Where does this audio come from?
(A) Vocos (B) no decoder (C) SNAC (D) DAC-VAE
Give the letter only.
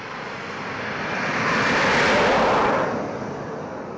B